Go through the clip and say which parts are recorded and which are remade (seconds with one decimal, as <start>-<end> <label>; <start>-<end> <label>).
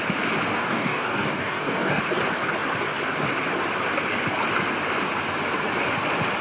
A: 0.0-0.5 recorded; 0.5-2.0 remade; 2.0-6.4 recorded